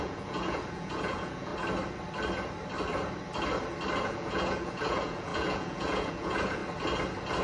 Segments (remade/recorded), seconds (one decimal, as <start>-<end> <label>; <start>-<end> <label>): 0.0-1.5 remade; 1.5-4.0 recorded; 4.0-6.6 remade; 6.6-7.4 recorded